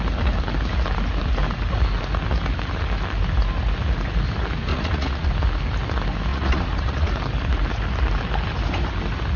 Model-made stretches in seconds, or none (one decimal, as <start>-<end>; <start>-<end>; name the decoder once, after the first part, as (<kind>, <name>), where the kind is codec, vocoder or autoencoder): 4.7-5.3 (vocoder, Vocos); 6.3-7.1